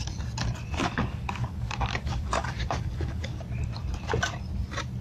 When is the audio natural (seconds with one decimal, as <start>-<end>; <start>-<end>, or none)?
0.0-0.8; 3.4-5.0